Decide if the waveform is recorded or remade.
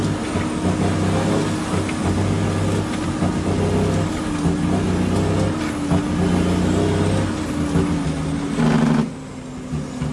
recorded